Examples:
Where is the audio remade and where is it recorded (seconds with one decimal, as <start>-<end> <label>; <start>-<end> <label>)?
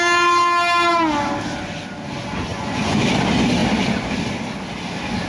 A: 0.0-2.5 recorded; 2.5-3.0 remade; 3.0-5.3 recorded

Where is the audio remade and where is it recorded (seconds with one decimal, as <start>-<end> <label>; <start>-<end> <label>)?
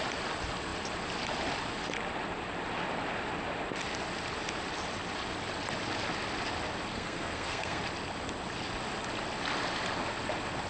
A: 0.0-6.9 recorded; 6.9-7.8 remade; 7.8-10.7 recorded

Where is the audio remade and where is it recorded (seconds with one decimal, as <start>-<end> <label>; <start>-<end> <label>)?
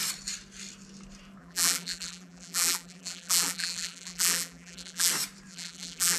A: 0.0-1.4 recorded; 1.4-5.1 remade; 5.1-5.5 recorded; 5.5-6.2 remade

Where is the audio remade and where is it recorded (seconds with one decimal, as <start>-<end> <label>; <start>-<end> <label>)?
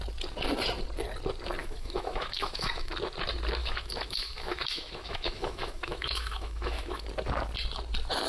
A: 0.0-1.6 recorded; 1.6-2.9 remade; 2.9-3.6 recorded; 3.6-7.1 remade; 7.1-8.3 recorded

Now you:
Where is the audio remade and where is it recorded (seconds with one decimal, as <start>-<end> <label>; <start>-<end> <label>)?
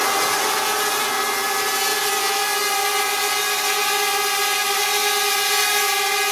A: 0.0-6.3 recorded